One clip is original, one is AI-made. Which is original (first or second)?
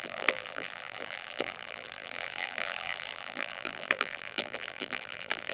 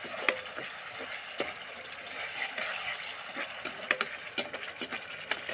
second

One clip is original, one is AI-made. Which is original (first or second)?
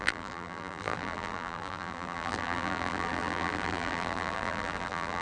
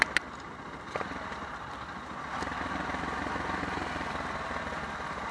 second